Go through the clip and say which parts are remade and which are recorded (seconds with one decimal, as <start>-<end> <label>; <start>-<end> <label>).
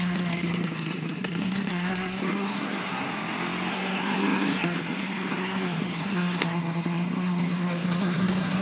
0.0-3.1 remade; 3.1-3.7 recorded; 3.7-8.6 remade